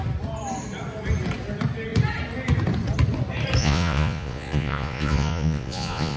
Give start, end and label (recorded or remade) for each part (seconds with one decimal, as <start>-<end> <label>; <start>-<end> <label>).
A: 0.0-3.6 recorded; 3.6-6.2 remade